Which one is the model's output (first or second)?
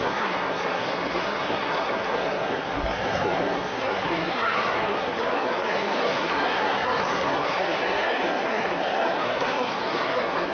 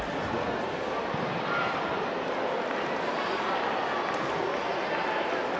first